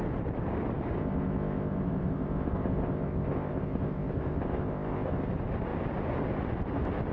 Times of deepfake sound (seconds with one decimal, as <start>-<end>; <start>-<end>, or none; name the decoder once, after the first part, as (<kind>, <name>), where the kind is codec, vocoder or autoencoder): 1.0-5.3 (codec, ZipCodec)